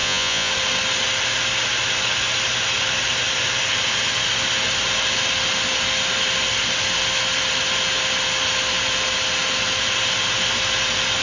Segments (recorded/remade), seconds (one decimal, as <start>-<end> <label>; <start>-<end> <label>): 0.0-0.5 remade; 0.5-11.2 recorded